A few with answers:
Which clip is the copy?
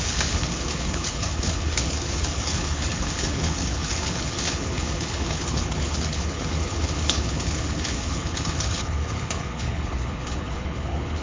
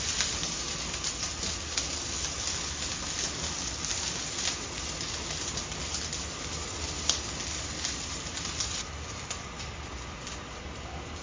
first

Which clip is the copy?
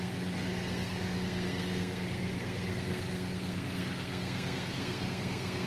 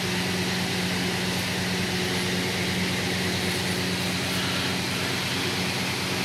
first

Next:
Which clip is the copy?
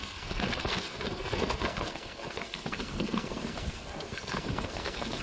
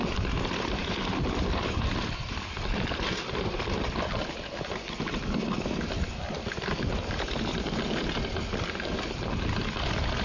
first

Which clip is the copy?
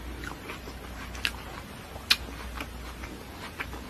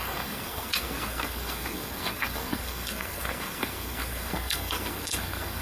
second